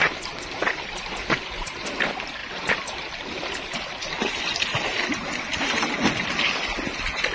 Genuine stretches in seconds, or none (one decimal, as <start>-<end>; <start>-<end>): 0.0-7.3